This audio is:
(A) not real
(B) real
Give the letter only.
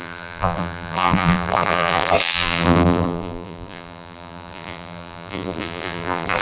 A